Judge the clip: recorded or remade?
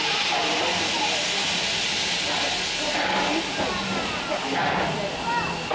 recorded